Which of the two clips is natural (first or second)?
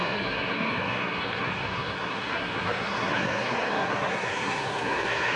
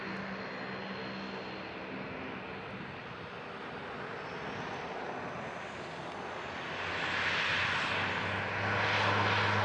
second